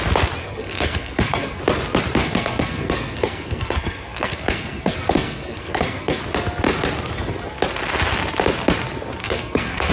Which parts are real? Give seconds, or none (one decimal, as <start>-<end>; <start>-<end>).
0.0-0.4; 1.6-2.2; 6.2-9.2